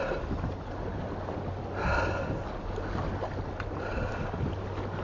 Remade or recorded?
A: recorded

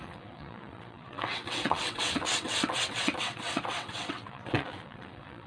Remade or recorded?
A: remade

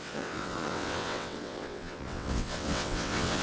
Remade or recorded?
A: remade